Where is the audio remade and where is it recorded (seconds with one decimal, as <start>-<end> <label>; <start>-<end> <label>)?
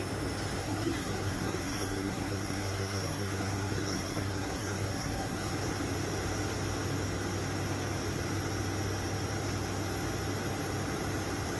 0.0-0.6 recorded; 0.6-5.5 remade; 5.5-11.6 recorded